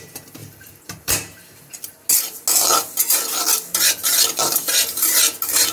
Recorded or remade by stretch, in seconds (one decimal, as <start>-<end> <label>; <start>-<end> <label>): 0.0-0.4 recorded; 0.4-1.7 remade; 1.7-5.7 recorded